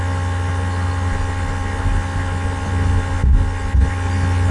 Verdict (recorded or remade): recorded